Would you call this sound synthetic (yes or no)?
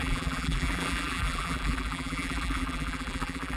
yes